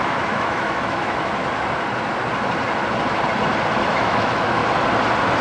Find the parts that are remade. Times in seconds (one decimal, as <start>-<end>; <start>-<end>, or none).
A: 0.0-1.4; 3.8-4.6